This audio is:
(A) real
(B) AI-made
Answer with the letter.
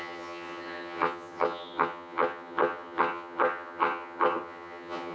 B